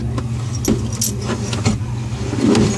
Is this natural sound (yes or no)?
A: yes